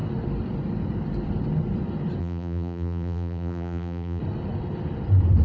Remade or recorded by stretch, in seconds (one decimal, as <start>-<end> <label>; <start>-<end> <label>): 0.0-2.2 recorded; 2.2-4.2 remade; 4.2-5.4 recorded